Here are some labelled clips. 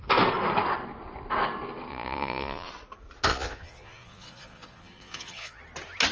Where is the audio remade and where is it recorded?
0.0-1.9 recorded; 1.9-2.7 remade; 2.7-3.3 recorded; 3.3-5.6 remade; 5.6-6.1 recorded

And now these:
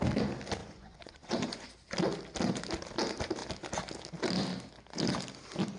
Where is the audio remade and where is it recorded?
0.0-0.6 recorded; 0.6-1.7 remade; 1.7-5.8 recorded

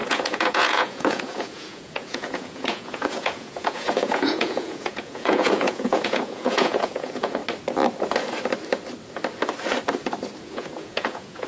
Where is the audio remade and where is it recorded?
0.0-7.4 remade; 7.4-10.4 recorded; 10.4-11.5 remade

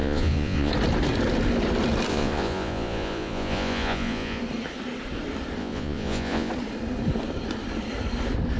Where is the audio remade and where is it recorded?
0.0-0.7 remade; 0.7-2.1 recorded; 2.1-4.4 remade; 4.4-5.6 recorded; 5.6-6.5 remade; 6.5-8.6 recorded